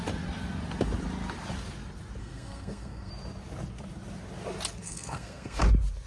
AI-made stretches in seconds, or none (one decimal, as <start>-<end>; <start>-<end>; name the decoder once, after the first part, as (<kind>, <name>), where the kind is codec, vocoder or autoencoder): 2.2-3.1 (codec, SNAC); 4.8-5.6